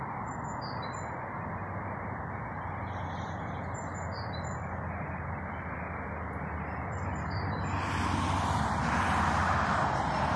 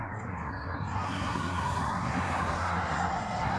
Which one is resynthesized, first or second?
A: second